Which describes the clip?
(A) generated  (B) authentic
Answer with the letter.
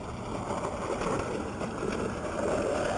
B